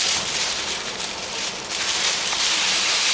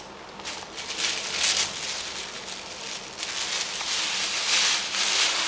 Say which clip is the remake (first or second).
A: first